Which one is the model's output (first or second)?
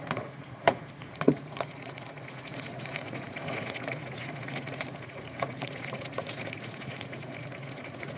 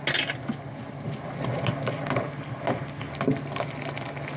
first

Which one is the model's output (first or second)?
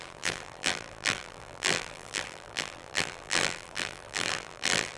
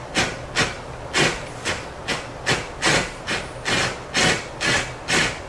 first